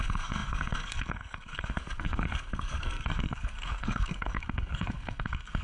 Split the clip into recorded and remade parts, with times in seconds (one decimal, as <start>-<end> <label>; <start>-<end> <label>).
0.0-5.6 remade